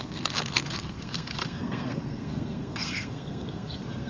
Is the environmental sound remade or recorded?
remade